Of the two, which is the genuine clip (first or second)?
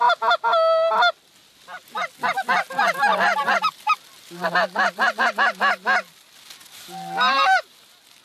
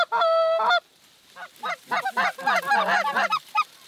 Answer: first